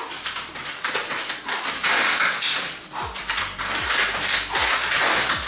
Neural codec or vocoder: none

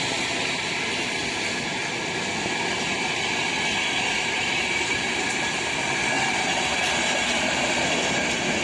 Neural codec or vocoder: none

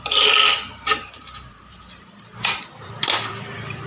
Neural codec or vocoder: vocoder, BigVGAN v2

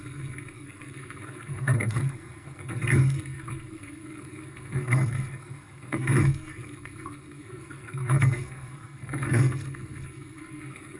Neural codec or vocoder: codec, SNAC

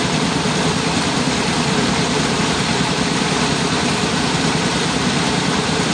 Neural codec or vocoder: vocoder, BigVGAN v2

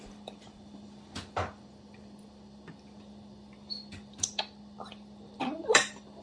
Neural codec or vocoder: vocoder, BigVGAN v2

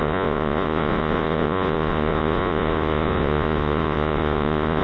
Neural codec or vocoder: vocoder, Vocos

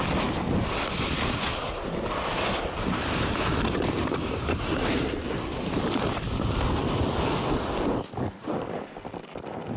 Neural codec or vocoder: none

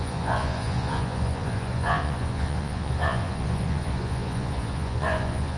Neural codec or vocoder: vocoder, Vocos